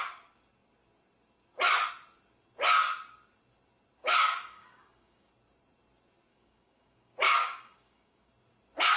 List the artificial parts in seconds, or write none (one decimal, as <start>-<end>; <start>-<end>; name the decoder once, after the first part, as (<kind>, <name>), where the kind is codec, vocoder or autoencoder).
4.0-5.3 (codec, DAC); 6.3-8.3